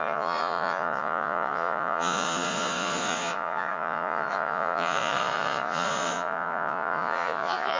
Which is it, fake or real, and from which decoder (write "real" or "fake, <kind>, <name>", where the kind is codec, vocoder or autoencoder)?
fake, vocoder, Vocos